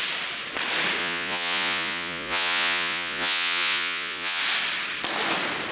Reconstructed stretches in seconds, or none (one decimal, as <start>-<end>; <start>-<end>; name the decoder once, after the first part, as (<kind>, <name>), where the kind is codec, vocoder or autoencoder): 1.0-4.4 (vocoder, Vocos)